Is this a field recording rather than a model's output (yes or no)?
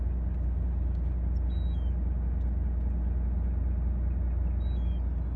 yes